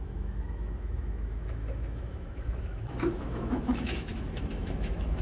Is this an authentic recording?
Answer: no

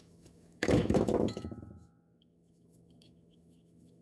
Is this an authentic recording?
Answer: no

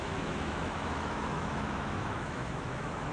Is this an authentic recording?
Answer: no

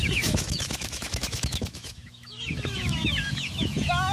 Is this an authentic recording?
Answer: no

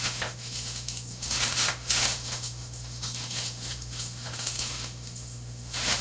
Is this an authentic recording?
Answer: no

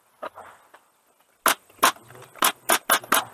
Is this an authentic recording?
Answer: yes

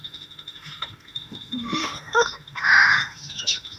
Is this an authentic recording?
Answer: no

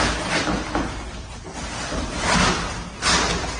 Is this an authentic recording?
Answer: yes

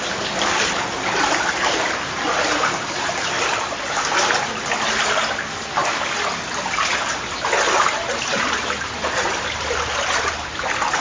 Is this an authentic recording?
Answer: yes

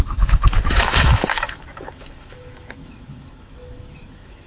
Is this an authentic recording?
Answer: no